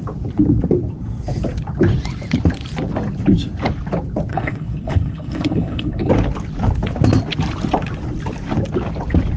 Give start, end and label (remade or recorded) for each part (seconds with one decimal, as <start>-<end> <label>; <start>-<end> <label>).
0.0-4.3 recorded; 4.3-6.1 remade; 6.1-9.4 recorded